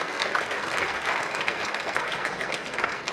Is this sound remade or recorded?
remade